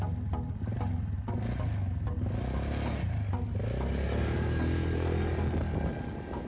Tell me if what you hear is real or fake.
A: real